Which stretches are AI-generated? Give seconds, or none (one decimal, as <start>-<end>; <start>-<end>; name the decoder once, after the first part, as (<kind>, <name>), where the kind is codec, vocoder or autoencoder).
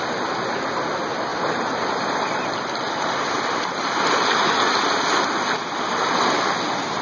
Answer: none